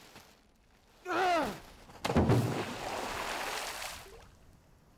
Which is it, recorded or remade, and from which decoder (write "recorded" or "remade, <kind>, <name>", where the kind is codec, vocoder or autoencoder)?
recorded